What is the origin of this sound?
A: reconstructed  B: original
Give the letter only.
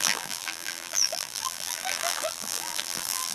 A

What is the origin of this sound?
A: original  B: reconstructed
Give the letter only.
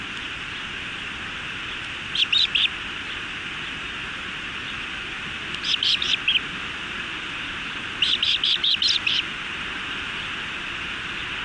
A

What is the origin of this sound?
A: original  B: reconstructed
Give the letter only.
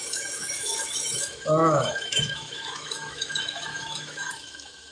B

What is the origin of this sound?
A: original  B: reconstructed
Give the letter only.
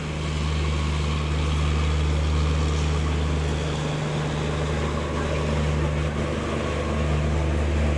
A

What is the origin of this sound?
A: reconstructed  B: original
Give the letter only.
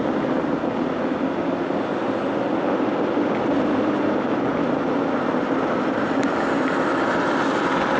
B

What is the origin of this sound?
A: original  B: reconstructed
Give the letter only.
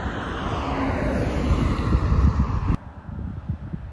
A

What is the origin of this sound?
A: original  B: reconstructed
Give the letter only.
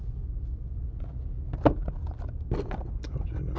A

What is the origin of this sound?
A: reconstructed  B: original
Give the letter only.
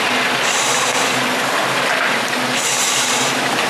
B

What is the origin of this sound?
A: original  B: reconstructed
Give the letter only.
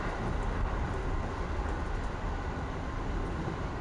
A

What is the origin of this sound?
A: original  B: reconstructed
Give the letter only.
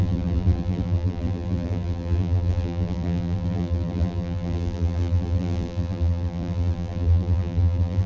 B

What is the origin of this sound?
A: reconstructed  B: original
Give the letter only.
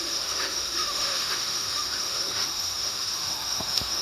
A